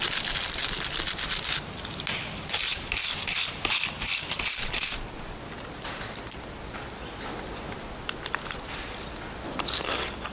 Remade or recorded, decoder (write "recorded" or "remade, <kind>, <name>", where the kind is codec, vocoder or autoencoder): recorded